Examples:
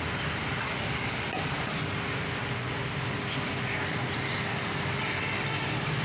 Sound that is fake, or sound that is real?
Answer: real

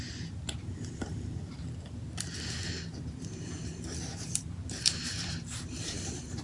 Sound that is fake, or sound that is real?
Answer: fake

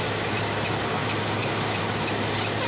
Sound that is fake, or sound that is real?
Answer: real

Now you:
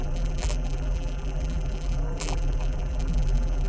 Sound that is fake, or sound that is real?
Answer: fake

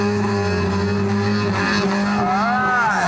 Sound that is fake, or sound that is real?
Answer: real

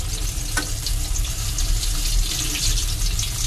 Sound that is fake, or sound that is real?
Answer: real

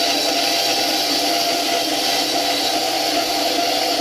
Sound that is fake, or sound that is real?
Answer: real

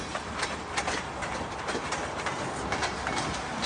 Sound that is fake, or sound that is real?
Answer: real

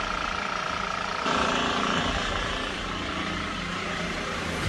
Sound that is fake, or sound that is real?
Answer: fake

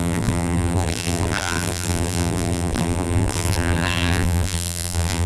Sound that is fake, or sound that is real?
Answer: fake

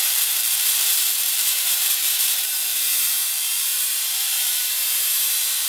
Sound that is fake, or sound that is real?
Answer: fake